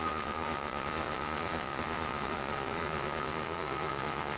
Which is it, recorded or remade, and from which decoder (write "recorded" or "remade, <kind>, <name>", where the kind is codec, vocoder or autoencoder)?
remade, vocoder, Vocos